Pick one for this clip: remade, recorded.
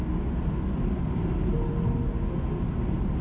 recorded